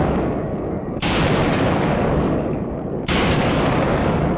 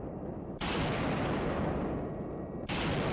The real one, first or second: second